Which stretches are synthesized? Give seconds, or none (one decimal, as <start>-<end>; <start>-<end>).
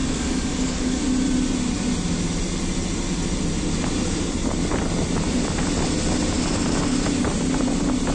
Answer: 0.0-1.0